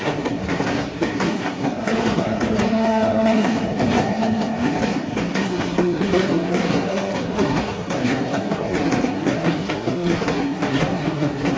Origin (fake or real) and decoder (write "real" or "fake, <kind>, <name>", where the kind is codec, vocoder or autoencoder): fake, codec, SNAC